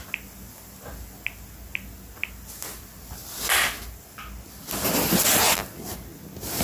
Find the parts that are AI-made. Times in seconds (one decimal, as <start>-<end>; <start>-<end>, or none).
none

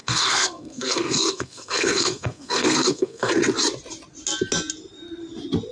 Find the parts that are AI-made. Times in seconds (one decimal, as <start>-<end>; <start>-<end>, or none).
0.0-3.3

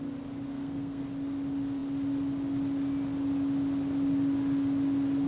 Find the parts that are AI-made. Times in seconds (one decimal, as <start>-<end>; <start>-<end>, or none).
0.5-1.0

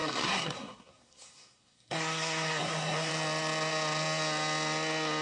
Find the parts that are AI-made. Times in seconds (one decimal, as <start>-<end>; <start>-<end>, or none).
0.0-3.1

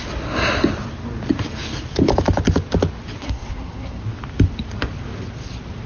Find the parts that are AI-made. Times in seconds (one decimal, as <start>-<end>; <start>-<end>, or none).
3.2-4.0

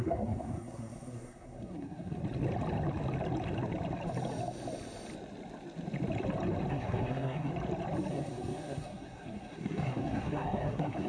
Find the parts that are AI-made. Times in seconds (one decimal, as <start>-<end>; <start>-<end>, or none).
0.0-2.2; 6.7-7.5; 8.1-11.1

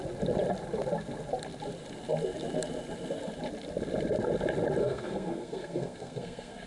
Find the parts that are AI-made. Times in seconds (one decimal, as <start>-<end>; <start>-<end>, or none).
4.8-6.7

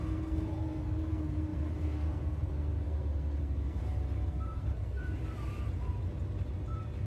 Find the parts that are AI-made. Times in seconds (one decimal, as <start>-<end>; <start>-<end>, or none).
0.0-3.8; 4.3-5.0